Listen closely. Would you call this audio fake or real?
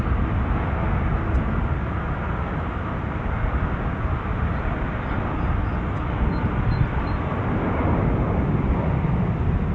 real